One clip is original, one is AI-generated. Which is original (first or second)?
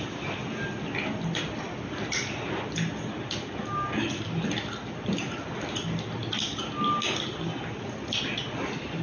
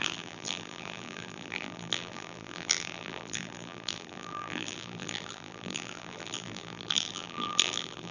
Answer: first